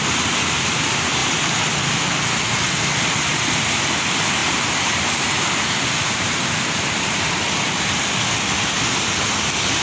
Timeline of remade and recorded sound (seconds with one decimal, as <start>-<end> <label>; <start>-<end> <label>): 0.0-4.4 recorded; 4.4-7.3 remade; 7.3-9.8 recorded